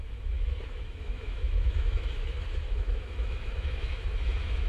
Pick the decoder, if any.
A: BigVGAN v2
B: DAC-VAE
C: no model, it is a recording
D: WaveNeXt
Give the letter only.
B